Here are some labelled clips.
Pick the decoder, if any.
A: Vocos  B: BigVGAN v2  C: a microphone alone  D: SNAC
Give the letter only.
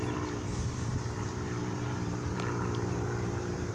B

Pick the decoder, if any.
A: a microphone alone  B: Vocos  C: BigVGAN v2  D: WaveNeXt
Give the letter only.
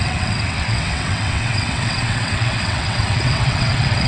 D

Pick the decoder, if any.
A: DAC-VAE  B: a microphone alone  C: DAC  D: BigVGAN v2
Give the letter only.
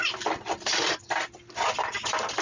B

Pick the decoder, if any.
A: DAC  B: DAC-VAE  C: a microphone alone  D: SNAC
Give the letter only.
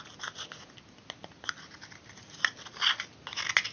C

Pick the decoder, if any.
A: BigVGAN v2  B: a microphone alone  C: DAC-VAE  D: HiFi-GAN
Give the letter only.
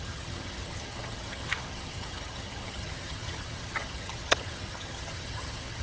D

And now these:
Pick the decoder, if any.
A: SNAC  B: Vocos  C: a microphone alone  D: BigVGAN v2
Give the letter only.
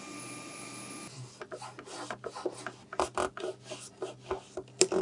C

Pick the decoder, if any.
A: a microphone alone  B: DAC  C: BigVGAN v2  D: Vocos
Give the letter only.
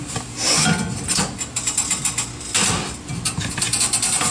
A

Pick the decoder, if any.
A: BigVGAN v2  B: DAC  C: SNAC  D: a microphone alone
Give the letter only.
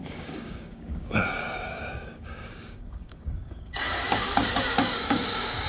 B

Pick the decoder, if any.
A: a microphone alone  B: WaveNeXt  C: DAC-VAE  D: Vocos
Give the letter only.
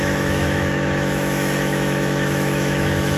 C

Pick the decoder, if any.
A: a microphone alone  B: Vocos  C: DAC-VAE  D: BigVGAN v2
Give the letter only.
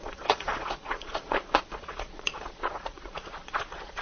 B